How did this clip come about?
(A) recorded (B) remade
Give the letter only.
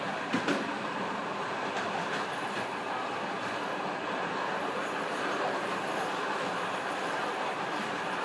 A